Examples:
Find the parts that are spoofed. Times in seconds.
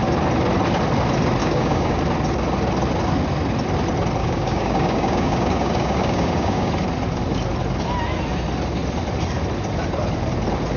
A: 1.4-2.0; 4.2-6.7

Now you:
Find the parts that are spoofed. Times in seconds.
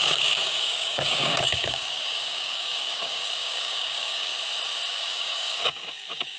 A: 0.0-4.3; 4.9-6.4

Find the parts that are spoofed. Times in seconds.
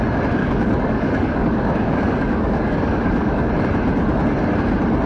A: 0.4-3.5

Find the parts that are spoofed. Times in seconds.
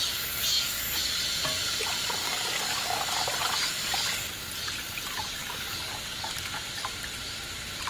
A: 0.5-1.2; 2.2-3.0; 5.4-6.3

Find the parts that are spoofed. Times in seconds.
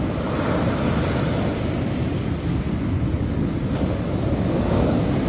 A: 2.2-5.3